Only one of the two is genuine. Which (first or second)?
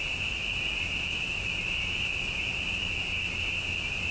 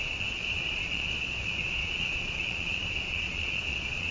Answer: first